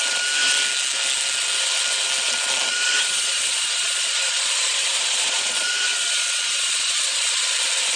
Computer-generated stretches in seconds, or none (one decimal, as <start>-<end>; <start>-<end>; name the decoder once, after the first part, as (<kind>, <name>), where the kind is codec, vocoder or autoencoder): 2.7-7.5 (vocoder, Vocos)